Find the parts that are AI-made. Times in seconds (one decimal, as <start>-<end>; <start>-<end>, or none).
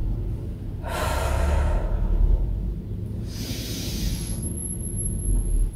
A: none